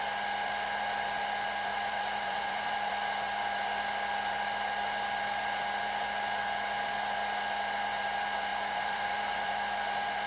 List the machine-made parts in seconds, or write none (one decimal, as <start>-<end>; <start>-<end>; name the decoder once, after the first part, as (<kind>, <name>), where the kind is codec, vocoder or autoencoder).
1.7-2.9 (vocoder, BigVGAN v2); 8.5-9.5